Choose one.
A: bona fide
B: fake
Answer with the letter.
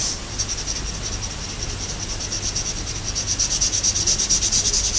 A